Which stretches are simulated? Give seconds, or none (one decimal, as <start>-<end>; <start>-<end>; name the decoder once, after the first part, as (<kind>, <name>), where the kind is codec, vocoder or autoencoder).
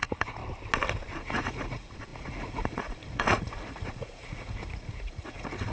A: 0.0-0.4 (vocoder, Vocos); 1.2-5.7